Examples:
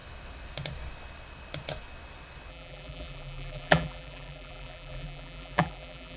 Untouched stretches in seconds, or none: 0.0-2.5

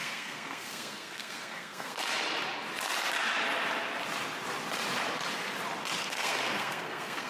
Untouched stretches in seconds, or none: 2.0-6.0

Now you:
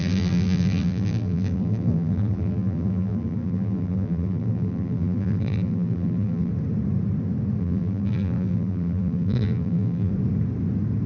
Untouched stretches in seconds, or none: 6.5-7.6; 10.1-11.1

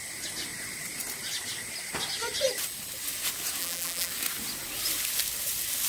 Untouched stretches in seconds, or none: 0.0-3.6; 4.1-5.9

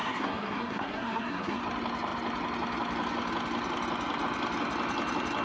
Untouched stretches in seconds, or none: 1.6-5.4

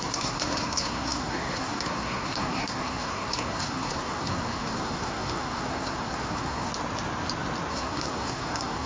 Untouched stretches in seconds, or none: 6.7-7.7

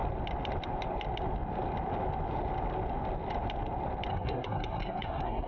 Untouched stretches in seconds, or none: 0.0-4.1